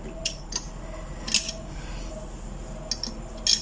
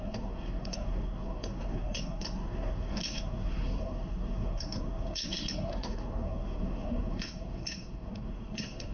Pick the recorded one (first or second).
first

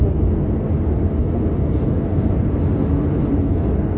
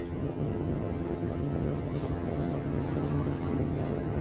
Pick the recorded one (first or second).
first